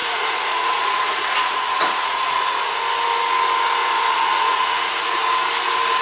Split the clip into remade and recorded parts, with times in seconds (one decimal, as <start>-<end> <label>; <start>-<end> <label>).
0.0-2.4 remade; 2.4-3.8 recorded; 3.8-5.2 remade; 5.2-6.0 recorded